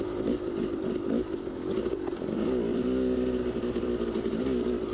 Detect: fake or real fake